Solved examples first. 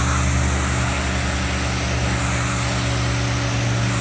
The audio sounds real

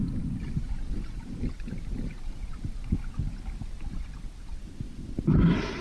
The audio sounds real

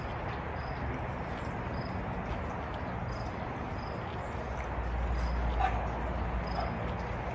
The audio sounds real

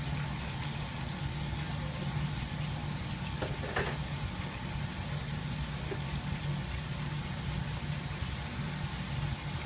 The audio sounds real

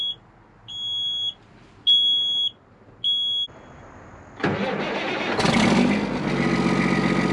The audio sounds real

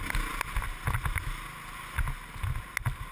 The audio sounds real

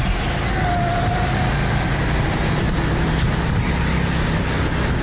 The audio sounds real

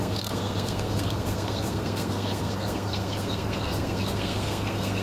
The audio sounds fake